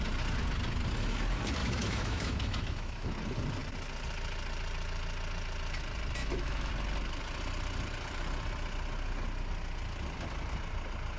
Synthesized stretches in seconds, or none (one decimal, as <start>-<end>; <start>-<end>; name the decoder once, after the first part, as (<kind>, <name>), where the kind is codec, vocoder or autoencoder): 1.6-3.1 (autoencoder, DAC-VAE); 6.2-6.7